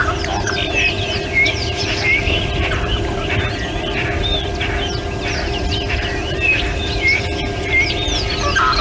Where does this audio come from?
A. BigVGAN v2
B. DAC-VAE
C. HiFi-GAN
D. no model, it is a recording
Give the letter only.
A